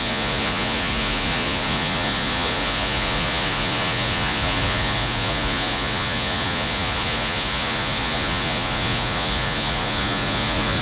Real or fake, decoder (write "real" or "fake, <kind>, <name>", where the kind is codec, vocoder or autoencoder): fake, vocoder, Vocos